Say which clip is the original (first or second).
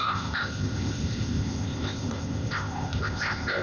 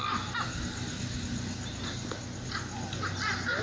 second